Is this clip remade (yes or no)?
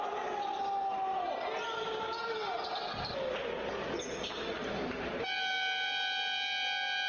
no